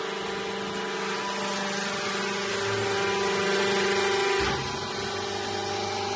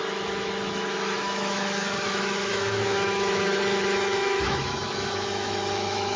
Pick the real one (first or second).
first